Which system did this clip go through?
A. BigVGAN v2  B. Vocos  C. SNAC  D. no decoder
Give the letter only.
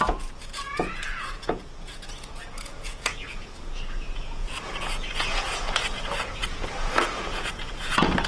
B